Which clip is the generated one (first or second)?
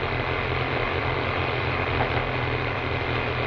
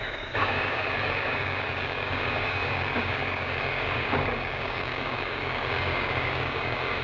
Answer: second